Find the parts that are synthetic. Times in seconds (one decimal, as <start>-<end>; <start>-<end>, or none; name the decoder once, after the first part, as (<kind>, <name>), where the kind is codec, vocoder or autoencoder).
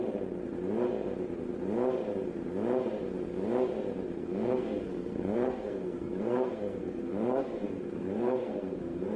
4.2-9.2 (codec, SNAC)